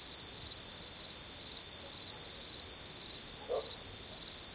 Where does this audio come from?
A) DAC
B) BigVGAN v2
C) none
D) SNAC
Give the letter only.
C